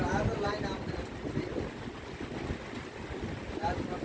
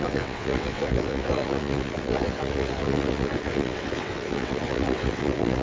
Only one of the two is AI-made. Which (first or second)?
second